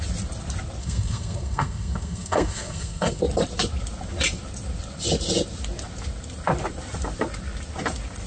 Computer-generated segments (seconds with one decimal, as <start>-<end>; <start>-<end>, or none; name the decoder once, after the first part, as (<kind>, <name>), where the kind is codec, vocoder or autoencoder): 0.8-3.2 (codec, SNAC)